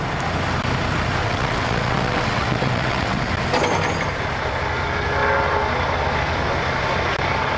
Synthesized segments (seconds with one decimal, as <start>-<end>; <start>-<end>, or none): 1.2-3.3